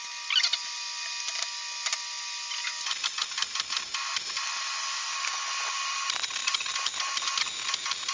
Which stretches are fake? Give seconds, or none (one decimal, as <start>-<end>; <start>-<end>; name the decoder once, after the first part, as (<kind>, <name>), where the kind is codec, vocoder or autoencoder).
none